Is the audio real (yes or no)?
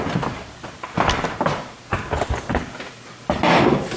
yes